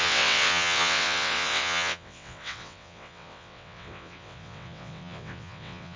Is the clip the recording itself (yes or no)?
no